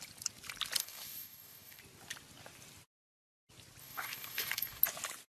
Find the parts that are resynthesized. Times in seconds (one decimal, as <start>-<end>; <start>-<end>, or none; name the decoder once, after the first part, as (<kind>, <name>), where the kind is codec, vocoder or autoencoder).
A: 0.8-1.8 (codec, DAC); 3.8-4.8